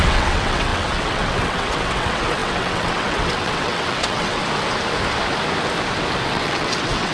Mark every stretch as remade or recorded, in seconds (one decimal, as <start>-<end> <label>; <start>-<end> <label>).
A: 0.0-4.4 remade; 4.4-6.2 recorded; 6.2-7.1 remade